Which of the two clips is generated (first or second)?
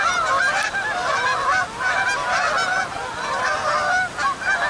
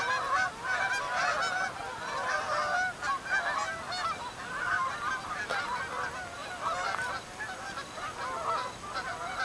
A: first